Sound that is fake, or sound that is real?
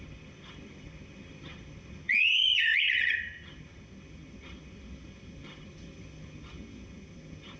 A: fake